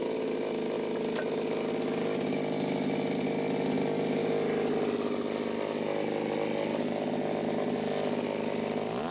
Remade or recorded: recorded